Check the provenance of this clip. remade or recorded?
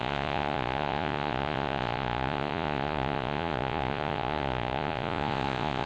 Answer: remade